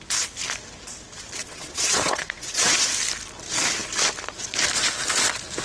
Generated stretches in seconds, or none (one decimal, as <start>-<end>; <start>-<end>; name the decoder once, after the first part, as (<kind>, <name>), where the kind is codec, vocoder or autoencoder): 1.4-2.9 (vocoder, WaveNeXt)